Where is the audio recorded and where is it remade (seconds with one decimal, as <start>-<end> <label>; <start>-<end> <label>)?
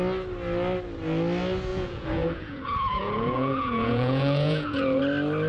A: 0.0-1.7 recorded; 1.7-5.0 remade; 5.0-5.5 recorded